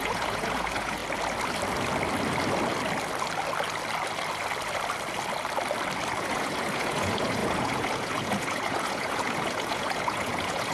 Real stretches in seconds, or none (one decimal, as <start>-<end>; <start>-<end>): 1.0-6.2